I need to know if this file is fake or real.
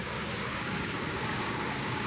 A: fake